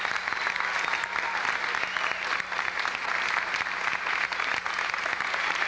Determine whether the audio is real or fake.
real